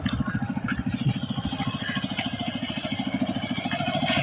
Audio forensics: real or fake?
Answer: real